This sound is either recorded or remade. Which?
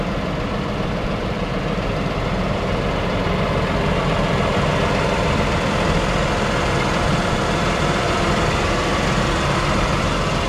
remade